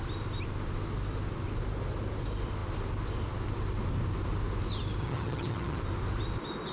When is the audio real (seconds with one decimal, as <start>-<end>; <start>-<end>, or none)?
0.0-5.0; 5.8-6.7